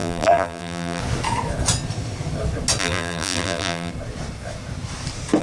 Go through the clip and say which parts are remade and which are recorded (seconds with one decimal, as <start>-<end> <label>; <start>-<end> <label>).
0.0-1.0 remade; 1.0-2.8 recorded; 2.8-3.9 remade; 3.9-5.4 recorded